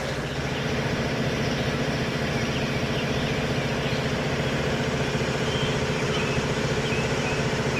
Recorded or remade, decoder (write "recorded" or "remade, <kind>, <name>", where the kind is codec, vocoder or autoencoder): remade, vocoder, BigVGAN v2